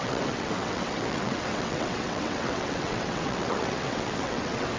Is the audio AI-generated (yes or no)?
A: yes